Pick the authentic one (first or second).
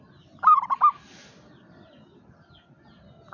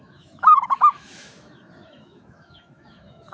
first